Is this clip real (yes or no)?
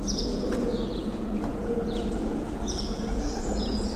no